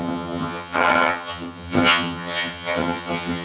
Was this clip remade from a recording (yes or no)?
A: yes